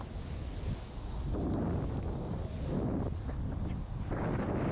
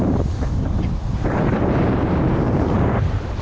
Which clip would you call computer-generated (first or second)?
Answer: second